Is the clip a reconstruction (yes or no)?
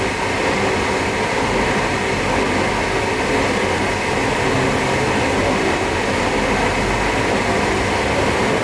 no